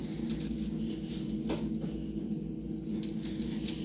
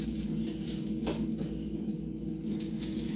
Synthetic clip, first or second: second